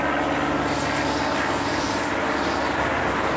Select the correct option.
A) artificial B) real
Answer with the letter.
B